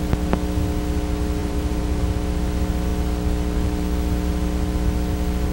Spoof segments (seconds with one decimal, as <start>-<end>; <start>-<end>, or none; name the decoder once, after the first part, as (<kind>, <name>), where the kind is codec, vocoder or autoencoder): 1.4-2.0 (vocoder, BigVGAN v2)